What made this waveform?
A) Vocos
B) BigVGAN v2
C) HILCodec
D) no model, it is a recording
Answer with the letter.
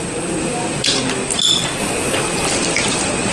D